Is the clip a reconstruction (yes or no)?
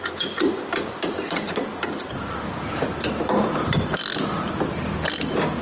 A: no